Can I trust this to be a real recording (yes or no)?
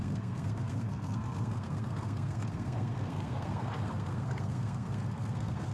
no